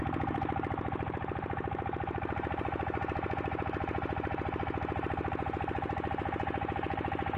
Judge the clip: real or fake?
fake